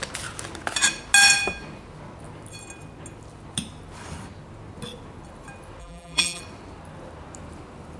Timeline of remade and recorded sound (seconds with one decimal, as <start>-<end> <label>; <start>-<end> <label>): 0.0-5.8 recorded; 5.8-6.4 remade; 6.4-8.0 recorded